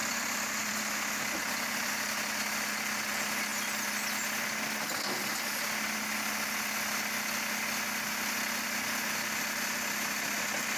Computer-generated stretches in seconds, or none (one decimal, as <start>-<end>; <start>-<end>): none